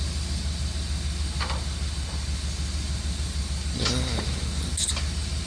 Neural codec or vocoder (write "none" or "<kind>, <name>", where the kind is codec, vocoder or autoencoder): none